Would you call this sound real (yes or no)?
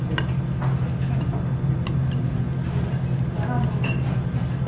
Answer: yes